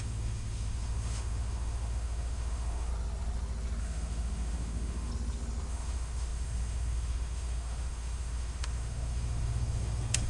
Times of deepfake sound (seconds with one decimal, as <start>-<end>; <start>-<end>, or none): 0.0-2.9; 3.8-5.1; 5.7-10.3